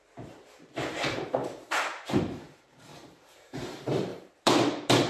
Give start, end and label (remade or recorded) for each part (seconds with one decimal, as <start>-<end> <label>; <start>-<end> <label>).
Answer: 0.0-5.1 remade